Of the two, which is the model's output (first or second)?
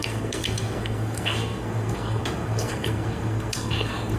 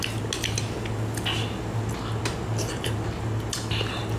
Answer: first